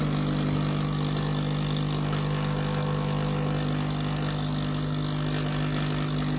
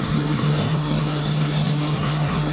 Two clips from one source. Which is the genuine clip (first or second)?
first